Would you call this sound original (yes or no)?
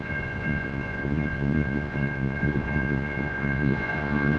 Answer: no